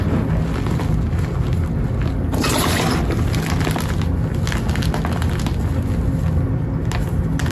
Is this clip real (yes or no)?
yes